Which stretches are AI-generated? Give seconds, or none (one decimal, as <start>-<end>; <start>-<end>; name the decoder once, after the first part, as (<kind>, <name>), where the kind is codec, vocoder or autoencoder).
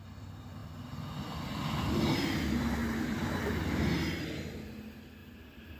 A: 5.2-5.8 (vocoder, BigVGAN v2)